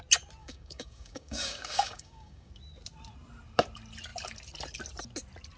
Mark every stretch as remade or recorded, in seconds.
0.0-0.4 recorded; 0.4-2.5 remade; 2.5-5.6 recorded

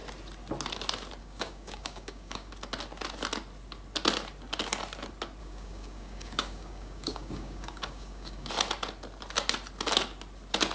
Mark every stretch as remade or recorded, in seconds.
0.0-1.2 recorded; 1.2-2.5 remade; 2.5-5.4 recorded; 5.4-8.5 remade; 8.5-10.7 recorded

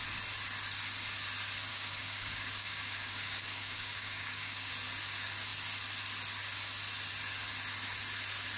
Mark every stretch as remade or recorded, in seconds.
0.0-1.7 recorded; 1.7-4.7 remade; 4.7-8.6 recorded

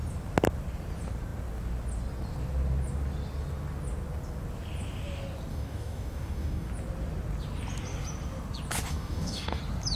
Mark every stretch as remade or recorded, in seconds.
0.0-5.5 recorded; 5.5-6.7 remade; 6.7-8.9 recorded; 8.9-9.6 remade; 9.6-10.0 recorded